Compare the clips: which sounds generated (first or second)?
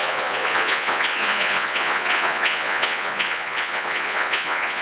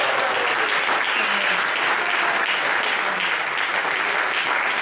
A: first